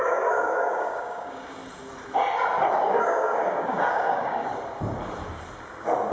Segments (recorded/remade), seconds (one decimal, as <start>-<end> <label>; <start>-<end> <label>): 0.0-1.6 remade; 1.6-2.9 recorded; 2.9-4.5 remade; 4.5-6.1 recorded